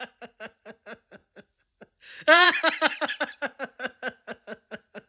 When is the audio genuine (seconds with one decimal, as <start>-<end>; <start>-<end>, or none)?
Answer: 0.0-1.2; 3.6-5.1